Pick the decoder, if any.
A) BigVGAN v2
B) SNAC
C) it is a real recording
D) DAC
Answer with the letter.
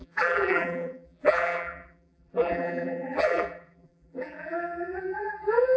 A